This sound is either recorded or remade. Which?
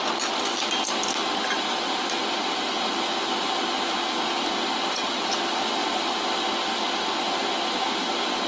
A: recorded